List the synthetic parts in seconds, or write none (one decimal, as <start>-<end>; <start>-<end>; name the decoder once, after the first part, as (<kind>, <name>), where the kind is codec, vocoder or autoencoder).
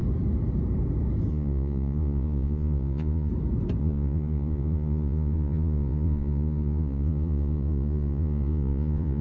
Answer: 1.3-3.3 (vocoder, Vocos); 3.8-9.2